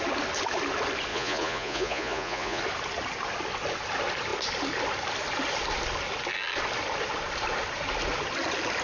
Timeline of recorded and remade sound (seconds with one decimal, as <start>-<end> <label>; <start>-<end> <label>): 0.0-1.1 recorded; 1.1-2.6 remade; 2.6-8.8 recorded